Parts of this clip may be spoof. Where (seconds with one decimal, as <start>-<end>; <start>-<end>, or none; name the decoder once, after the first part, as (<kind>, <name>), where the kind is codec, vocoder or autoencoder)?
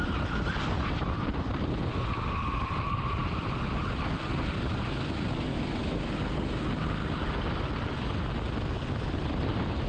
5.5-6.1 (autoencoder, DAC-VAE)